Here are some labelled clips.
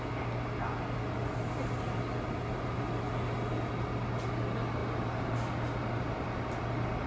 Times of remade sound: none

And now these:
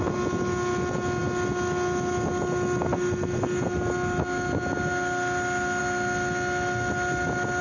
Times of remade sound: none